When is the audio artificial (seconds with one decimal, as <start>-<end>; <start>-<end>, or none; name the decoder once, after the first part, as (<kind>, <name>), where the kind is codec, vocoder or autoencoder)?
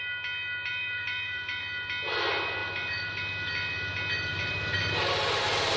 0.7-1.6 (vocoder, BigVGAN v2); 2.6-3.2; 4.3-5.8